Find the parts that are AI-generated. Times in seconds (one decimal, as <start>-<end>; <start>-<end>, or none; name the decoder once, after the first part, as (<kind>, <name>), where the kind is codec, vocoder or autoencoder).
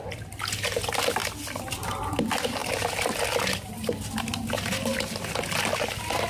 none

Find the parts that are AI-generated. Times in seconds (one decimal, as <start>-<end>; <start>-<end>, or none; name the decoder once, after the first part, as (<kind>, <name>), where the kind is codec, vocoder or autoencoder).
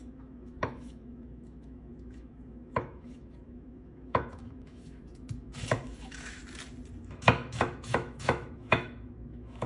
0.0-6.4 (autoencoder, DAC-VAE); 7.0-9.7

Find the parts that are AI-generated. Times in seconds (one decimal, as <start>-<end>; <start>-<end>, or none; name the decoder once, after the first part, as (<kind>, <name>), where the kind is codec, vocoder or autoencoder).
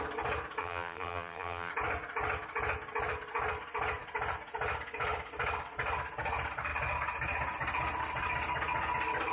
0.6-1.7 (vocoder, BigVGAN v2)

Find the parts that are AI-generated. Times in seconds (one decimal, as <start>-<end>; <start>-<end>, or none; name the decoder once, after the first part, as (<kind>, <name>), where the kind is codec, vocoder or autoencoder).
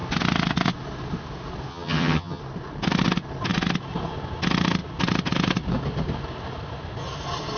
1.7-2.4 (vocoder, HiFi-GAN)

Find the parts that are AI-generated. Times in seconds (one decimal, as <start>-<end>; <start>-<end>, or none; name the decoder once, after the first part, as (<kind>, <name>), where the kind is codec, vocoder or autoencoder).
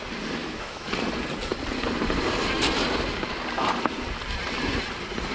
0.4-0.9 (autoencoder, DAC-VAE)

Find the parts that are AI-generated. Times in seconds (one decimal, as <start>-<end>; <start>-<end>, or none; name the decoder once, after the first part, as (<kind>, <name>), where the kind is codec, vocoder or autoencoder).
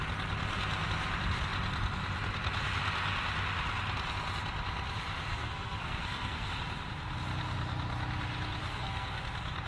5.3-6.5 (codec, SNAC); 8.6-9.2